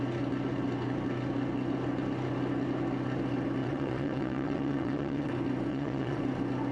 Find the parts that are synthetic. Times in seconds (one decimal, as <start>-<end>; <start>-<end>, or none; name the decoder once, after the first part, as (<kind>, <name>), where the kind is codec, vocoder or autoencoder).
3.6-5.3 (vocoder, WaveNeXt); 5.7-6.2